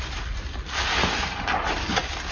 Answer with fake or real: real